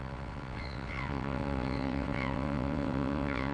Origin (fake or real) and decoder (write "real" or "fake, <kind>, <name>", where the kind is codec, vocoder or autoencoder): fake, vocoder, WaveNeXt